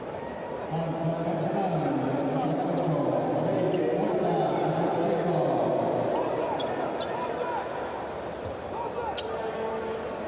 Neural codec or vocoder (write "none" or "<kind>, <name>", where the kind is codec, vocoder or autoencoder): none